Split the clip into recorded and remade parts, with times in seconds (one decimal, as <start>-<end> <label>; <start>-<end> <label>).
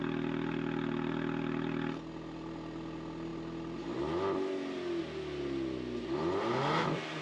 0.0-7.2 recorded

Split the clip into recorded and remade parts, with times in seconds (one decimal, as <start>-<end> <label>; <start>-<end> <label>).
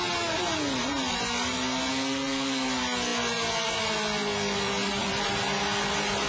0.0-6.3 recorded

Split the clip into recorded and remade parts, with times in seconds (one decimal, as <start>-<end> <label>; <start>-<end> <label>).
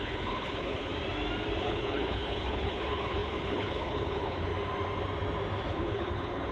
0.0-0.9 remade; 0.9-1.6 recorded; 1.6-4.5 remade; 4.5-5.7 recorded; 5.7-6.5 remade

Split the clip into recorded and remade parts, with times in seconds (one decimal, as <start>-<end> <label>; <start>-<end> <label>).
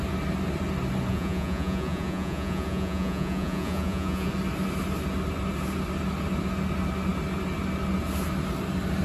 0.0-1.1 recorded; 1.1-4.3 remade; 4.3-9.0 recorded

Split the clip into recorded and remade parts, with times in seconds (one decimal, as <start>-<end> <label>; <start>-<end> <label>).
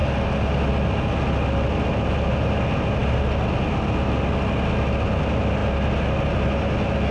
0.0-7.1 recorded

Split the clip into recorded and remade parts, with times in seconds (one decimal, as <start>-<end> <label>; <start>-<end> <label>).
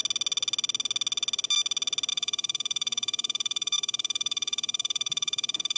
0.0-2.1 recorded; 2.1-5.8 remade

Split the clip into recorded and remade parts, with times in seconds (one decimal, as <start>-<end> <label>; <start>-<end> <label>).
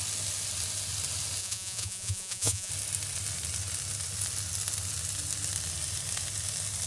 0.0-1.4 recorded; 1.4-2.7 remade; 2.7-6.9 recorded